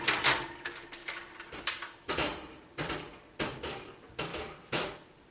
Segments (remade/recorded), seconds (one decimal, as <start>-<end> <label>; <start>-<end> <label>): 0.0-1.0 recorded; 1.0-3.4 remade; 3.4-4.3 recorded; 4.3-5.3 remade